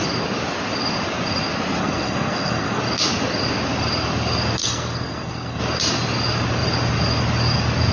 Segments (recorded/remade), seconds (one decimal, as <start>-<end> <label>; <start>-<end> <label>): 0.0-1.8 recorded; 1.8-2.8 remade; 2.8-4.6 recorded; 4.6-5.6 remade; 5.6-7.9 recorded